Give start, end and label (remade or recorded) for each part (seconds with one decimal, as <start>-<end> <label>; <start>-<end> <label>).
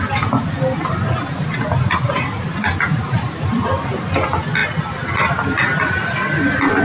0.0-2.9 recorded; 2.9-3.5 remade; 3.5-6.8 recorded